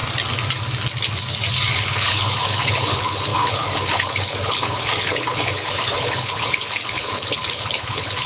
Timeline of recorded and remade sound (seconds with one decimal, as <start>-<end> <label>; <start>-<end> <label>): 0.0-1.7 recorded; 1.7-8.3 remade